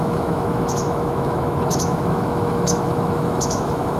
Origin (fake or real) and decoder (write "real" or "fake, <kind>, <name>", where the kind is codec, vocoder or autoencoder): fake, autoencoder, DAC-VAE